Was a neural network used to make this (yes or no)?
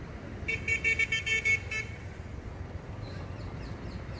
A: no